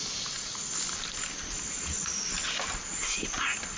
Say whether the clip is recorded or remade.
recorded